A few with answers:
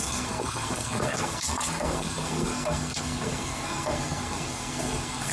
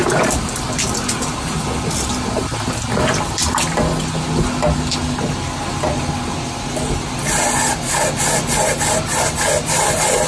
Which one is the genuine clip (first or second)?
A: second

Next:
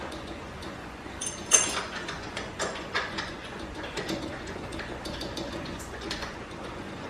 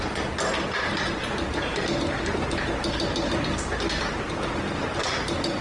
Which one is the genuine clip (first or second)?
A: second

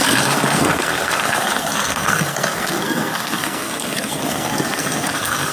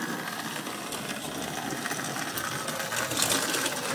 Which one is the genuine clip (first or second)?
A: second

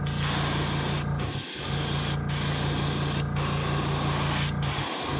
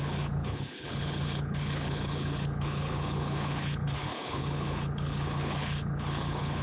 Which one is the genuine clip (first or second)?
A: first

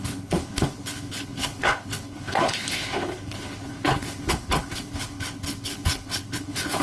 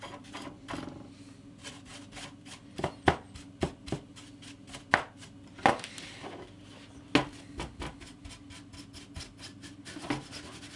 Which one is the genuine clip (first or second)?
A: second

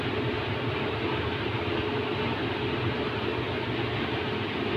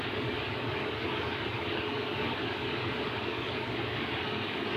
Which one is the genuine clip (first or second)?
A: first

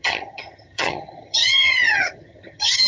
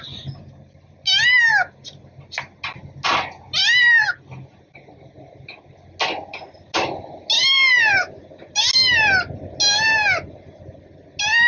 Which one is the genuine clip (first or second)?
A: second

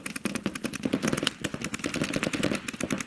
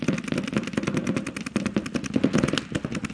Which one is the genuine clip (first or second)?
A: second